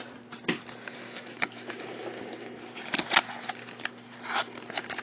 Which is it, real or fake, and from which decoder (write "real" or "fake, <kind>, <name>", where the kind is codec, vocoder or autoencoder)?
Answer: real